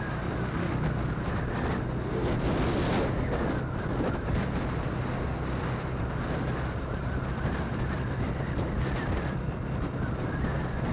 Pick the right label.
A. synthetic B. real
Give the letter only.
B